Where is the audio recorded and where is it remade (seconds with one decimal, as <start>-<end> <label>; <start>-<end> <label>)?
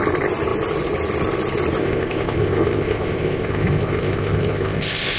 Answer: 0.0-1.8 recorded; 1.8-5.2 remade